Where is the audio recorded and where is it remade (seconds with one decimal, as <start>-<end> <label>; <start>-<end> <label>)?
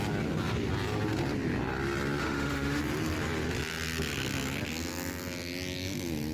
0.0-2.2 recorded; 2.2-2.8 remade; 2.8-6.3 recorded